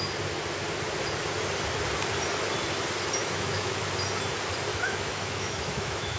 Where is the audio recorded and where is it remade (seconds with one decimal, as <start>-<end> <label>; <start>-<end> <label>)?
0.0-3.2 recorded; 3.2-3.8 remade; 3.8-4.7 recorded; 4.7-6.2 remade